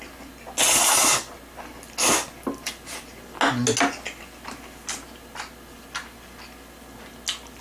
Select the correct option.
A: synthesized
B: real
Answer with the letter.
B